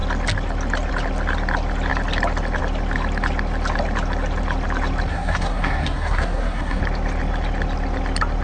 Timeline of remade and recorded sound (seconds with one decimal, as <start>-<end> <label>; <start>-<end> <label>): 0.0-5.1 recorded; 5.1-6.8 remade; 6.8-8.4 recorded